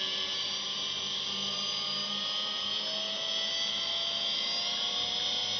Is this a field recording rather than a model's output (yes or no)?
yes